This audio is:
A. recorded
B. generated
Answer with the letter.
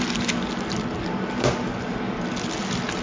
A